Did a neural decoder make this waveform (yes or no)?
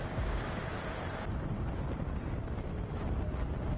no